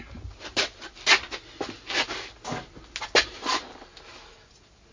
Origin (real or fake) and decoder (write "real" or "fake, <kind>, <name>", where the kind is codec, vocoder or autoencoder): real